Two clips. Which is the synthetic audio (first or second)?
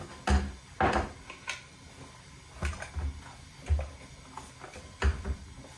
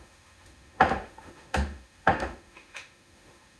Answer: second